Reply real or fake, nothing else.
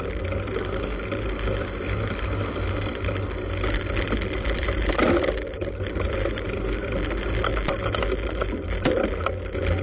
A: real